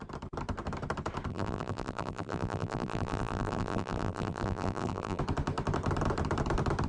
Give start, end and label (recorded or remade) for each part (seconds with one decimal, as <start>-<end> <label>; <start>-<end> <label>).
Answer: 0.0-1.3 recorded; 1.3-5.2 remade; 5.2-6.9 recorded